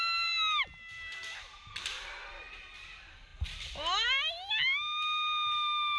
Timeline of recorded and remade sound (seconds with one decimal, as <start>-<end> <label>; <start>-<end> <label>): 0.0-1.8 recorded; 1.8-2.3 remade; 2.3-6.0 recorded